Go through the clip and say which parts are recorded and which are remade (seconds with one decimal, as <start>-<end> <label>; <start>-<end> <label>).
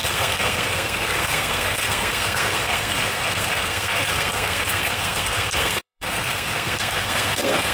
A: 0.0-7.7 remade